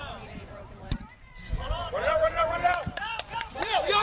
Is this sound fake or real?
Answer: fake